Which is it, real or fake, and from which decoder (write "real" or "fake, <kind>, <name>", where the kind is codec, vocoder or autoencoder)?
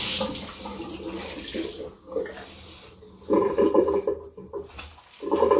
real